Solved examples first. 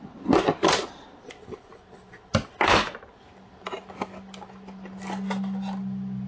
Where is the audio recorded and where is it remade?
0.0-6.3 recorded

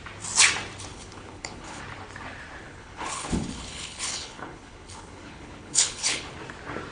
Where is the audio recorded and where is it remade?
0.0-0.9 recorded; 0.9-1.8 remade; 1.8-2.6 recorded; 2.6-6.3 remade; 6.3-6.9 recorded

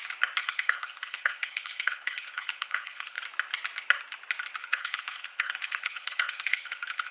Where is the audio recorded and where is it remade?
0.0-0.4 recorded; 0.4-3.2 remade; 3.2-4.6 recorded; 4.6-7.1 remade